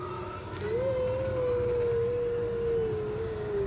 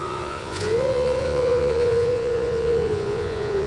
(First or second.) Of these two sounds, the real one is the first